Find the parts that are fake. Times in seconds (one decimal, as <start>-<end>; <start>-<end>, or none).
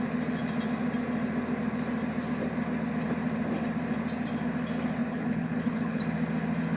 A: 5.0-6.0